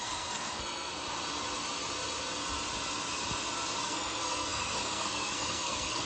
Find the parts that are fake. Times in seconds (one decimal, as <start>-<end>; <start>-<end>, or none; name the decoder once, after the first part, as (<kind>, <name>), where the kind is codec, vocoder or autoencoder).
0.0-0.9 (codec, SNAC); 3.8-6.1